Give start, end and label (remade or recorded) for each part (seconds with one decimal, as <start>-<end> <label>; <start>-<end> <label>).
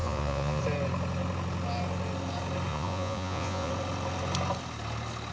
0.0-0.6 remade; 0.6-2.7 recorded; 2.7-3.7 remade; 3.7-5.3 recorded